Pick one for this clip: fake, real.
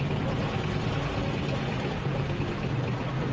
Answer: real